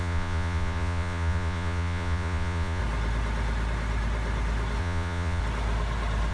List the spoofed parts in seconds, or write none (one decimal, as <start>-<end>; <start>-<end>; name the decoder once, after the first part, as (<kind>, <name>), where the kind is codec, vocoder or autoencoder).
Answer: 0.0-2.8 (vocoder, Vocos); 4.8-5.4